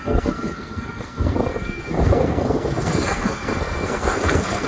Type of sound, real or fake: fake